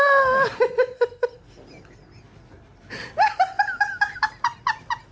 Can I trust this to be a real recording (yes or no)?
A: yes